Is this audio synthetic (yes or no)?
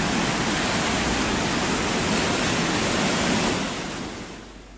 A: no